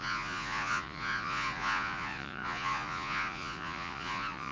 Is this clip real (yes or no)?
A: no